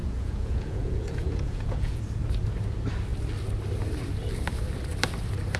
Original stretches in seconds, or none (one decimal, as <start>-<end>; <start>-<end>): 2.0-5.6